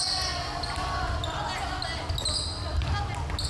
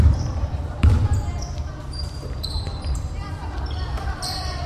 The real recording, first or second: first